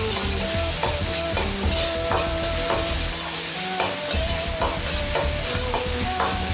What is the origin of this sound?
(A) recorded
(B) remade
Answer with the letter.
A